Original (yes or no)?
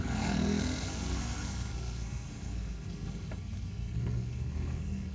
no